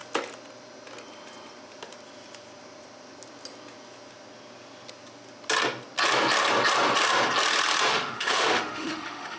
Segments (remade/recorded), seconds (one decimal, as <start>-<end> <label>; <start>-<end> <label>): 0.0-7.9 recorded; 7.9-9.4 remade